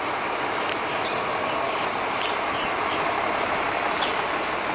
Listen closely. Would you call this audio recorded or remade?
recorded